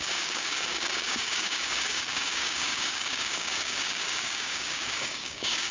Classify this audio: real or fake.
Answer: fake